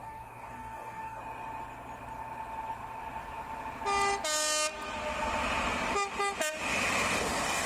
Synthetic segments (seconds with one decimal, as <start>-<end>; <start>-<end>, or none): 0.0-1.2